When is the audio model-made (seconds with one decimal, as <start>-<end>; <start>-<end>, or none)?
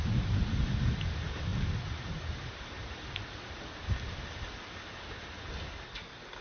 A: 1.5-2.9